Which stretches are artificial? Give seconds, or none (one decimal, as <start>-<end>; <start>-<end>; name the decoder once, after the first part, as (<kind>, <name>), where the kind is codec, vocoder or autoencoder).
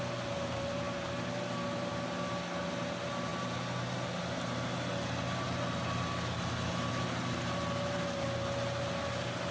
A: none